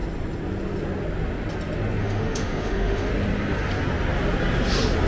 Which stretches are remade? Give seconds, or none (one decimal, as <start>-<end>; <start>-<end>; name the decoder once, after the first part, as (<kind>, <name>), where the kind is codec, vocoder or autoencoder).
2.0-3.1 (autoencoder, DAC-VAE)